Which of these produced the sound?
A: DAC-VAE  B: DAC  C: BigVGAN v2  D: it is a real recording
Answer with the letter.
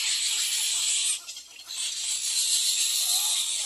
D